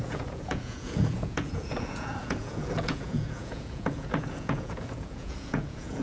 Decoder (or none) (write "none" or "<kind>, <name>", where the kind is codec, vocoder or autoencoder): vocoder, Vocos